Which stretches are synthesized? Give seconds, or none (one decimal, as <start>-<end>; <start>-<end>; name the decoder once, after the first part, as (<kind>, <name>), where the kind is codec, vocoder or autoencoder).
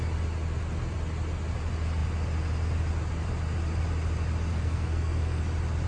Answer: 4.5-5.4 (codec, SNAC)